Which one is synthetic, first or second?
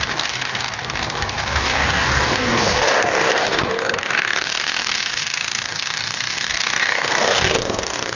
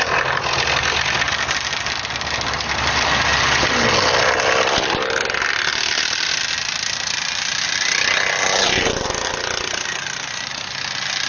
first